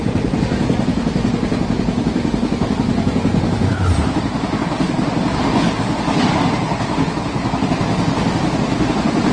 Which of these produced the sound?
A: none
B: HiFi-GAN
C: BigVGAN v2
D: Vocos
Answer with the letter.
A